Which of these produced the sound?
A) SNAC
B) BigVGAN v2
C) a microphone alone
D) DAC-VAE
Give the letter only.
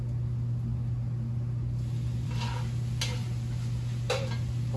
C